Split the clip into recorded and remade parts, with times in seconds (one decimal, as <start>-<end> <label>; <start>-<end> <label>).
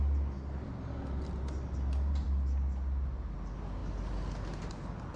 0.0-5.2 recorded